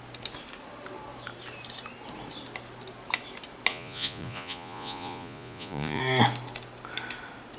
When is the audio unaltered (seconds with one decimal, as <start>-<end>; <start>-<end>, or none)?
0.0-3.7; 6.0-7.6